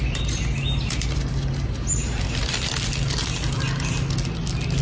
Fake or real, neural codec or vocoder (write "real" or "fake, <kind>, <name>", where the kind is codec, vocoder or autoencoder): real